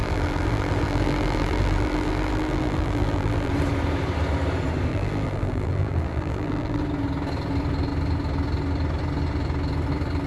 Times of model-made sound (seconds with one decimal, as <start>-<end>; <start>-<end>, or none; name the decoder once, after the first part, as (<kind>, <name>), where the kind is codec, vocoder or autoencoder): 0.0-3.5 (vocoder, BigVGAN v2); 4.9-6.8